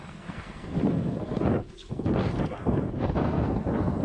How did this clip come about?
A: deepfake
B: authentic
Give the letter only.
A